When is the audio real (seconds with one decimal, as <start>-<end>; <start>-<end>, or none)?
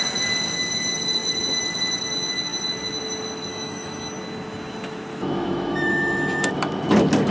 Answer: 0.0-3.5; 4.1-5.1; 6.5-7.3